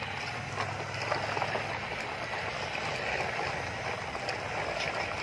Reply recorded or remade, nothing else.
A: recorded